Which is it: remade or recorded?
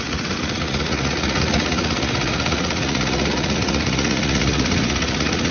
remade